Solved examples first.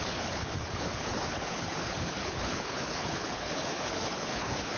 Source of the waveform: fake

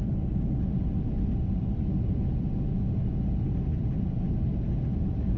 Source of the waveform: real